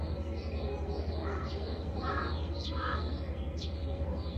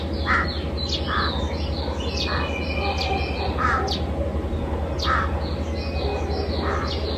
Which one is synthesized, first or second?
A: first